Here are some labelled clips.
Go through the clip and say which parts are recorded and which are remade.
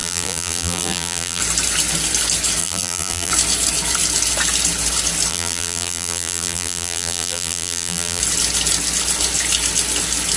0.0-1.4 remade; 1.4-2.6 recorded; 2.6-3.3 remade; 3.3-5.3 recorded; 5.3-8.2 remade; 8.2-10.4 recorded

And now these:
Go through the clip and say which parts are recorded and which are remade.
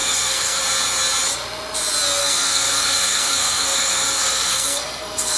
0.0-0.6 remade; 0.6-2.2 recorded; 2.2-5.4 remade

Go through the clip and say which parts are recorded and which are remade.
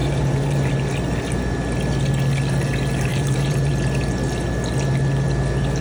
0.0-0.7 remade; 0.7-3.1 recorded; 3.1-3.7 remade; 3.7-5.8 recorded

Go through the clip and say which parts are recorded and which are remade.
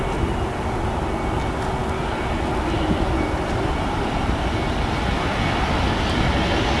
0.0-6.8 recorded